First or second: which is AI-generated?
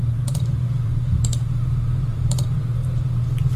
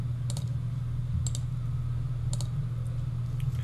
first